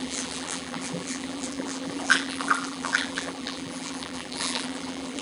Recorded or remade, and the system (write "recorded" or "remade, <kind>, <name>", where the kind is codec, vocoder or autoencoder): remade, vocoder, BigVGAN v2